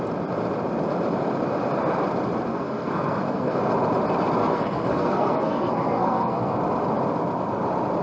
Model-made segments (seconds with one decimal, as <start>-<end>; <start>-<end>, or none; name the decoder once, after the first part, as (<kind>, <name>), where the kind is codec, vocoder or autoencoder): 2.5-3.6 (codec, SNAC); 4.4-6.6